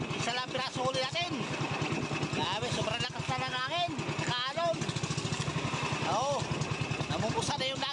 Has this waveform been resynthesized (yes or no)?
no